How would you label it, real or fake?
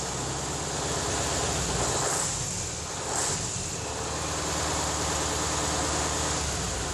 real